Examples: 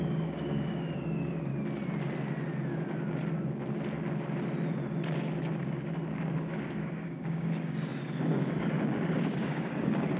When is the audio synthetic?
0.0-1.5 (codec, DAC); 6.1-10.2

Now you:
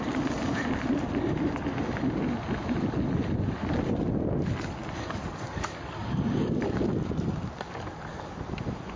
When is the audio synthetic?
4.8-6.8 (codec, DAC)